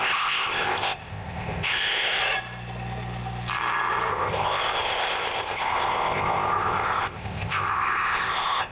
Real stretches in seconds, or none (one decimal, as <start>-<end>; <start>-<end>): 2.2-4.1